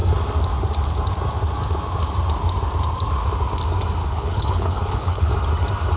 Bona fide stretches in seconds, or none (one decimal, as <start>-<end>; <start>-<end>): 0.0-4.0; 5.3-6.0